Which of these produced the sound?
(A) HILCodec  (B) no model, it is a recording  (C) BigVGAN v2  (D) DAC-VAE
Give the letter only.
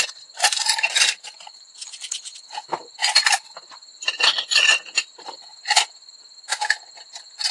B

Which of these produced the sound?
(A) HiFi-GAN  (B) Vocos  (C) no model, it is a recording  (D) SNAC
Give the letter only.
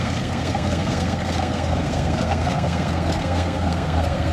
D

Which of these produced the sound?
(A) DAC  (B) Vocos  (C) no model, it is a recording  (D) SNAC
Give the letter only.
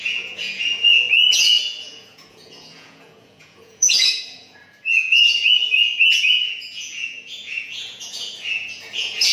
B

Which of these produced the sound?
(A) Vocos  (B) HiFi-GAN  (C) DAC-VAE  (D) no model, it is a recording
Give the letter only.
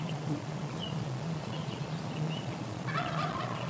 A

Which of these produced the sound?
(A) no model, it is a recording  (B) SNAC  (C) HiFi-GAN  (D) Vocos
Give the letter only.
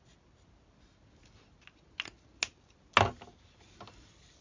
A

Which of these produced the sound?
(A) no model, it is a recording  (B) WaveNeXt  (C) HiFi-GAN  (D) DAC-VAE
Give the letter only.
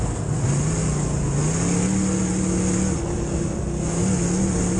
A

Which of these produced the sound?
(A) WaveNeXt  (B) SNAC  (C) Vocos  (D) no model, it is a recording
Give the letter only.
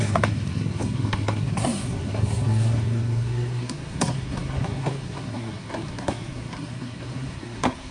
B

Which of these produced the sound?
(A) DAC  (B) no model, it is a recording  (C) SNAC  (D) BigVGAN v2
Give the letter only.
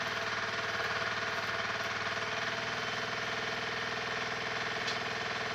B